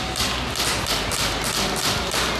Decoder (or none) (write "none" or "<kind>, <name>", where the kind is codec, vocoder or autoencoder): none